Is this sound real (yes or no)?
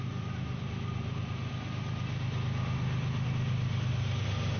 yes